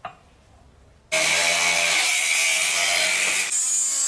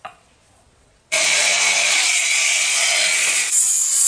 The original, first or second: first